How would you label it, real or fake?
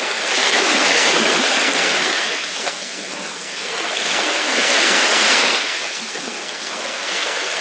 fake